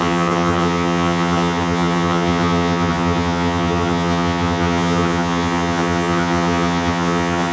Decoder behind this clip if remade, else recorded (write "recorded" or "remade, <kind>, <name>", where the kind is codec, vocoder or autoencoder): remade, vocoder, HiFi-GAN